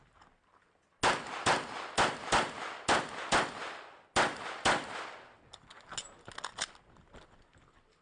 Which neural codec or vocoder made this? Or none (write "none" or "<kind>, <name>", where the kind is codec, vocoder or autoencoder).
none